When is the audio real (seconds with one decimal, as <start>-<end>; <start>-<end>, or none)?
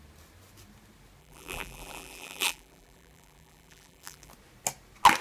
0.0-1.2; 4.3-5.2